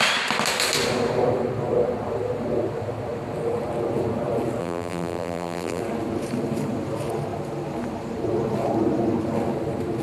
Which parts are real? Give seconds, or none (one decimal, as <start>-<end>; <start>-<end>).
0.0-4.6; 5.8-10.0